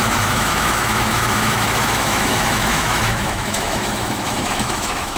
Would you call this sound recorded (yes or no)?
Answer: no